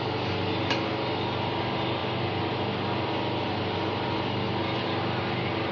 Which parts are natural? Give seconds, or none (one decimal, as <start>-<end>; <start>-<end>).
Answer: 0.0-5.7